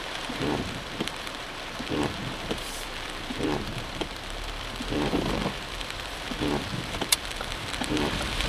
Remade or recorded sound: remade